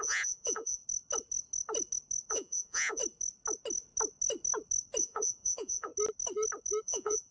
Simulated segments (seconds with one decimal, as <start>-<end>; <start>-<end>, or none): 0.0-0.8; 2.3-3.0; 5.0-5.9; 6.8-7.3

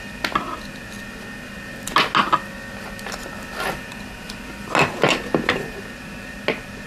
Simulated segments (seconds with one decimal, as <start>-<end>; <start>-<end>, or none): none